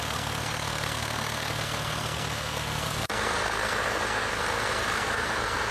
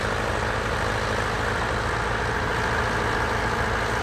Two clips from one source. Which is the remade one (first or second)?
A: first